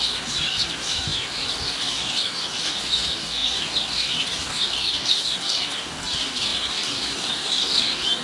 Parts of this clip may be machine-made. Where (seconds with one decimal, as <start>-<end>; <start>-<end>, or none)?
0.0-8.2